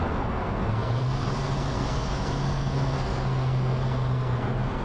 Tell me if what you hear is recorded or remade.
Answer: remade